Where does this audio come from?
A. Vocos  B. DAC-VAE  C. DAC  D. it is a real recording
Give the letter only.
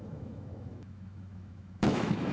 B